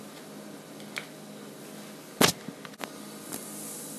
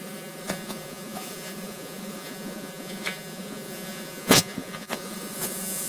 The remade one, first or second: second